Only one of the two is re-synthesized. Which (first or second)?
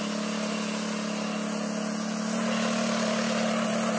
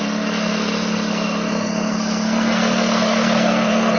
second